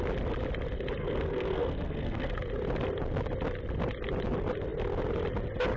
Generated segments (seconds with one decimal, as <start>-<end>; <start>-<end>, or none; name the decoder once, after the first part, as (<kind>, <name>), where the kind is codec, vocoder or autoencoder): 1.0-2.3 (codec, SNAC)